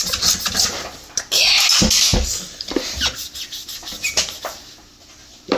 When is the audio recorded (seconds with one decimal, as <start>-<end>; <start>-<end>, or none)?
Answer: 0.0-5.6